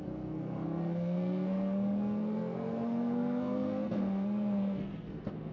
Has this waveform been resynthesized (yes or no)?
yes